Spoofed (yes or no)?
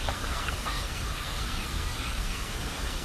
yes